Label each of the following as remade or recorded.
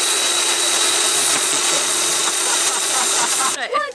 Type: remade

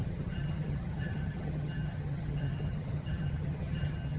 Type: remade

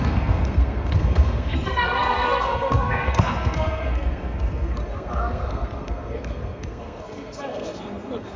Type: remade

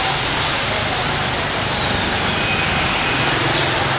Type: recorded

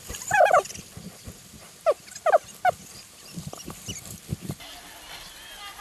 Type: recorded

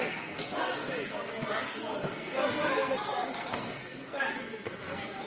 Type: remade